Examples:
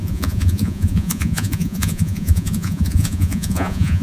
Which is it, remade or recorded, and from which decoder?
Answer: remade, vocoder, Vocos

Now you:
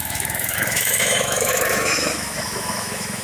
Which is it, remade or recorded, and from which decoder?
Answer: remade, autoencoder, DAC-VAE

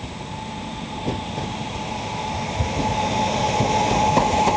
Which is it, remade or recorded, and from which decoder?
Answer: recorded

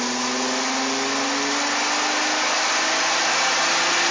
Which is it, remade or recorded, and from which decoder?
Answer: recorded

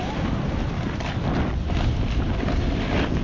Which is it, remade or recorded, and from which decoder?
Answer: recorded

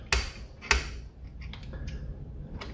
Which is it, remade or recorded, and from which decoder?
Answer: recorded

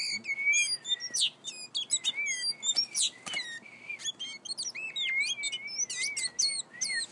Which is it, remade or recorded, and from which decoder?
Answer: recorded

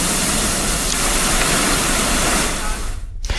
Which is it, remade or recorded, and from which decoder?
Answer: recorded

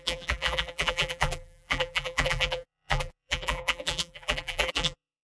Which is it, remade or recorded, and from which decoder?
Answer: remade, vocoder, BigVGAN v2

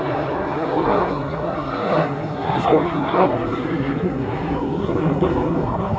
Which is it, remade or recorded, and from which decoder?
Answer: remade, codec, SNAC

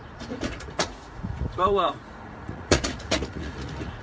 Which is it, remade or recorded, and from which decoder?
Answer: remade, vocoder, Vocos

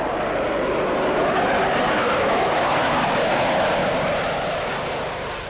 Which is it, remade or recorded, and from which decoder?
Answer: recorded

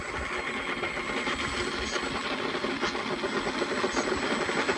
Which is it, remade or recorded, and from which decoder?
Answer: recorded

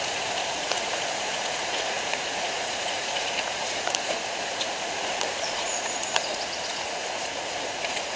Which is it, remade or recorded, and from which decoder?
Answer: remade, vocoder, Vocos